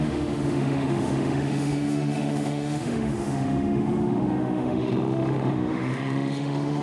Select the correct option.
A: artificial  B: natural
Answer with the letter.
A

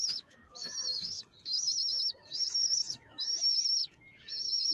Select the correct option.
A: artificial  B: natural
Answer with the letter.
A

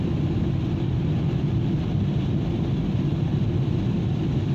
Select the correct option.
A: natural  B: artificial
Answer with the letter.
A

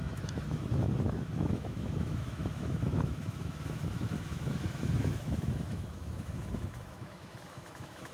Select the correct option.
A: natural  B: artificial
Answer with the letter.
B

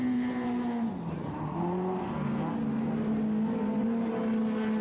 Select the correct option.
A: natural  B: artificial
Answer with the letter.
A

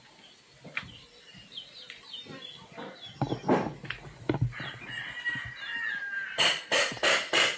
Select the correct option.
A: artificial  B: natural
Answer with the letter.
B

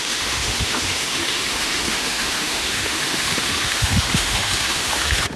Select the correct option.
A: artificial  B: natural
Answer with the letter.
A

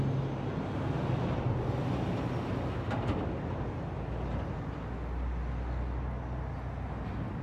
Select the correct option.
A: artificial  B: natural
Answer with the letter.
B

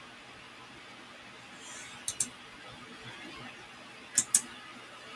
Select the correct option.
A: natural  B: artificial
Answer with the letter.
A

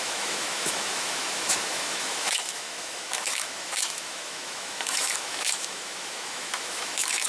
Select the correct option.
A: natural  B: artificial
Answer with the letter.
B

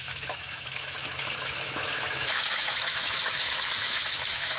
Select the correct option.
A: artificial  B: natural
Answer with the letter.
A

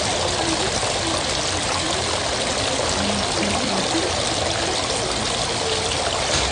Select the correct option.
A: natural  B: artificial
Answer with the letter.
A